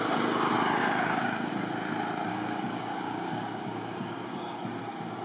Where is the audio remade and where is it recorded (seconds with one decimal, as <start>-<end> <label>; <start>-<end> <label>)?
0.0-0.8 recorded; 0.8-1.5 remade; 1.5-2.3 recorded; 2.3-4.6 remade; 4.6-5.2 recorded